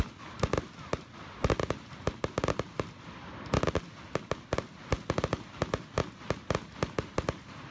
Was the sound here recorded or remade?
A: recorded